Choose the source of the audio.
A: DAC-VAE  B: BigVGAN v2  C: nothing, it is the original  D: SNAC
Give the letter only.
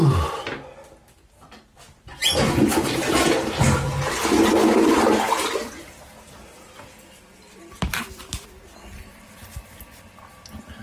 C